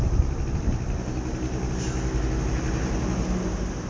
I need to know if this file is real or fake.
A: real